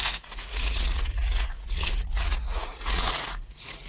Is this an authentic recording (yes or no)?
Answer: no